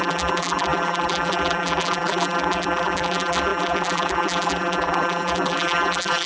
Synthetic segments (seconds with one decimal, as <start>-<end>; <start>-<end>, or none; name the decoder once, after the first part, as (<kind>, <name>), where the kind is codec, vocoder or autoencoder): 0.0-6.3 (vocoder, BigVGAN v2)